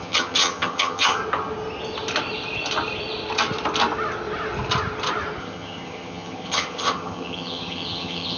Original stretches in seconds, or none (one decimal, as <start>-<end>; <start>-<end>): 1.2-5.4